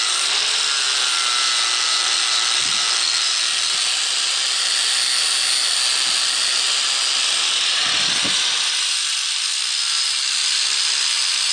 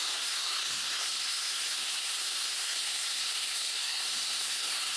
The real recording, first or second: first